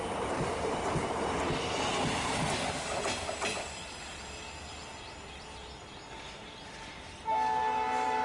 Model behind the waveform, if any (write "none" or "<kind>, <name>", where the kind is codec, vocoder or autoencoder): none